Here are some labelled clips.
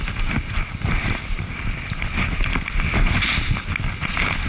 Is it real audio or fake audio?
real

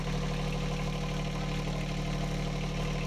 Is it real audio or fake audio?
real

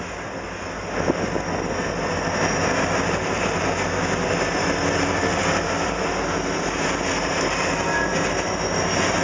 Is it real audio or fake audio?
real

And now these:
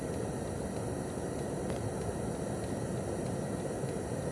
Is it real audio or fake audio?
real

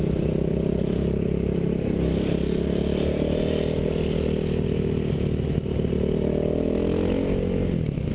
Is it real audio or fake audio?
real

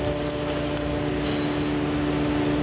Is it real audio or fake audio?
real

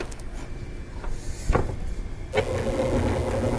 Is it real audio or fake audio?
real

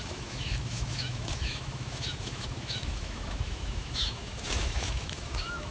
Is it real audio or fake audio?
fake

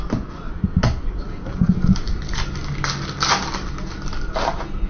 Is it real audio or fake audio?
real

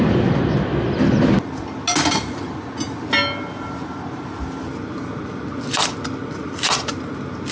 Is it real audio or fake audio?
real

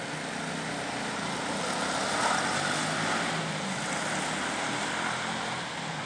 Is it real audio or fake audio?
real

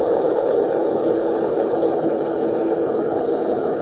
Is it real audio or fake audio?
fake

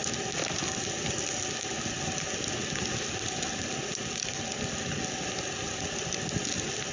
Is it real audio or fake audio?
real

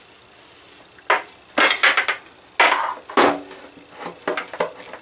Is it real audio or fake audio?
real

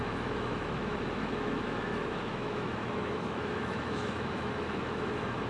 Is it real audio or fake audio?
fake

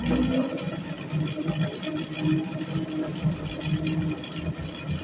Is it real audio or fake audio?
real